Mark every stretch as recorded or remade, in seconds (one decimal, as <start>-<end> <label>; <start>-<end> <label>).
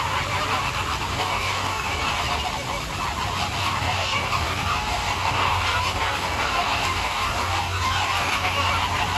0.0-1.1 recorded; 1.1-2.2 remade; 2.2-3.6 recorded; 3.6-8.7 remade; 8.7-9.2 recorded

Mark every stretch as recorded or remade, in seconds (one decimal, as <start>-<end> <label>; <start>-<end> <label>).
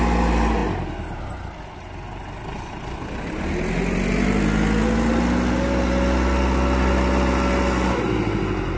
0.0-8.8 recorded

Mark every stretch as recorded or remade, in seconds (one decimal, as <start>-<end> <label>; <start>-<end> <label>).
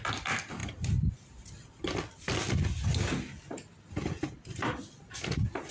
0.0-5.7 recorded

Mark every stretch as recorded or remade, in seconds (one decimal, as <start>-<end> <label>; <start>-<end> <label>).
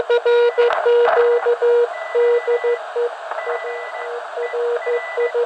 0.0-5.5 recorded